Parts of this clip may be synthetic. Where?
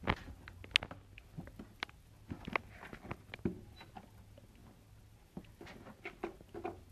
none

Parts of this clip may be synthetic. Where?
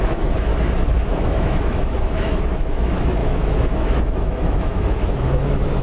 0.0-0.5 (autoencoder, DAC-VAE); 1.1-5.8